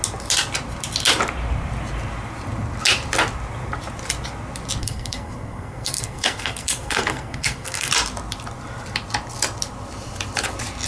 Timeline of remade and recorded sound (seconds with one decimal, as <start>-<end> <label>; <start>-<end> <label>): 0.0-4.8 recorded; 4.8-7.9 remade; 7.9-10.9 recorded